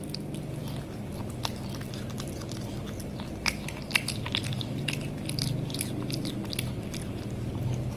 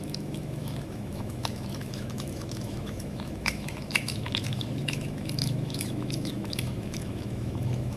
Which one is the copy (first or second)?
second